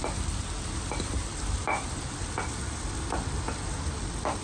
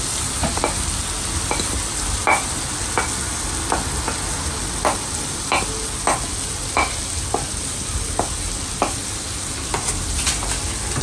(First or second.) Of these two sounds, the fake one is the first